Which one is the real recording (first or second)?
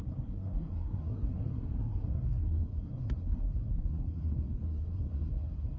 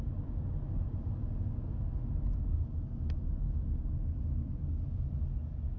second